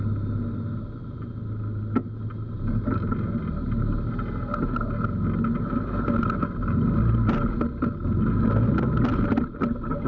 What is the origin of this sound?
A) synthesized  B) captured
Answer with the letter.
B